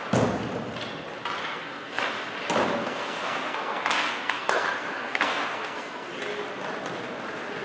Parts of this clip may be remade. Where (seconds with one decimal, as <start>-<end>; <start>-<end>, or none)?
1.4-2.0; 2.8-6.1

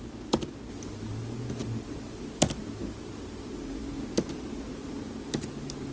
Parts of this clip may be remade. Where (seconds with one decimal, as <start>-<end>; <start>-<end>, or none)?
none

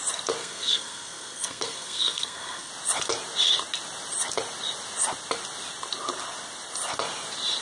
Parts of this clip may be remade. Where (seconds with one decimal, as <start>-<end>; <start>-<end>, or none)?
0.4-2.7

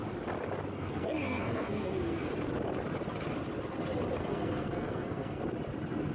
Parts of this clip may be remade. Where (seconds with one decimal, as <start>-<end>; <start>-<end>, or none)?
0.7-2.3; 4.2-5.4

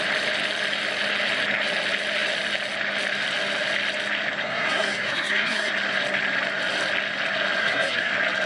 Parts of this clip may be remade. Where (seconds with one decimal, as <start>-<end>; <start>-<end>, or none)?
4.4-5.7; 7.6-8.1

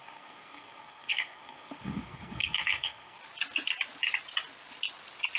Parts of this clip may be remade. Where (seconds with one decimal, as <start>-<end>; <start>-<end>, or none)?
0.0-3.2

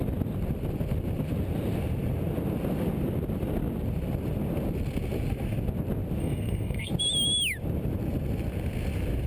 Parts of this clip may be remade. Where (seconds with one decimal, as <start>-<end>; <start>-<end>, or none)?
6.2-6.9

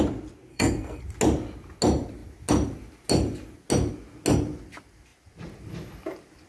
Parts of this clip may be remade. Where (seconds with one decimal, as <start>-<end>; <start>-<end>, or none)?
0.5-1.0